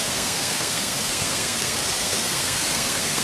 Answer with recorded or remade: remade